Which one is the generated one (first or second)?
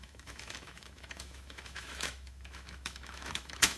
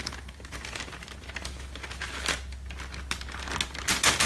first